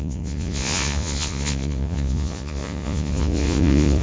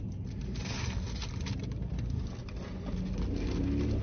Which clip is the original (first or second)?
second